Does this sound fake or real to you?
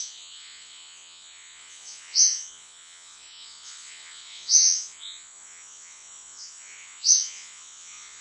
fake